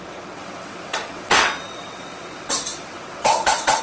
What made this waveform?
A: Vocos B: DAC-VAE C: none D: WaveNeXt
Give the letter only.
D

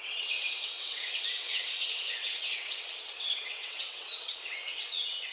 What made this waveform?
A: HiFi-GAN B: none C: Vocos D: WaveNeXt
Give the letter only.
D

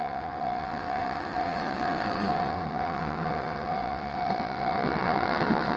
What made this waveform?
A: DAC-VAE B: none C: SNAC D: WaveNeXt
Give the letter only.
D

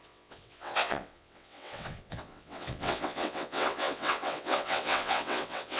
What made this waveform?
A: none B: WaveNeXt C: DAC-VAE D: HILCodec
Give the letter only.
B